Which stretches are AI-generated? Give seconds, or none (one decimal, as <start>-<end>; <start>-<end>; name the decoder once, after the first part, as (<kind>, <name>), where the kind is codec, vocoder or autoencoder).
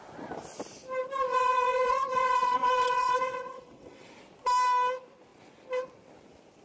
1.3-4.1 (vocoder, WaveNeXt)